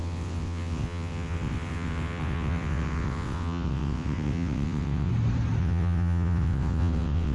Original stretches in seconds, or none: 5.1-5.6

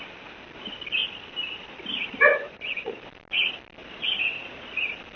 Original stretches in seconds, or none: 0.0-2.3; 3.0-5.2

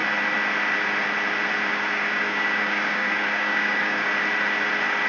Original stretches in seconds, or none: 0.0-1.7; 4.1-5.1

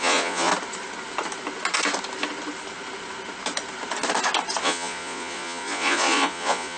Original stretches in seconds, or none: 0.5-4.6

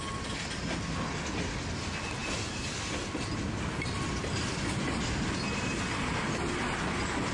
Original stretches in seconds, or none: 0.0-7.3